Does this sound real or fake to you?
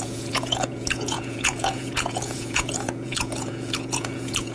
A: fake